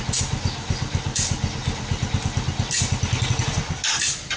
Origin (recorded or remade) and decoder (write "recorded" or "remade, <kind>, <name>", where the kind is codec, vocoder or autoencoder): recorded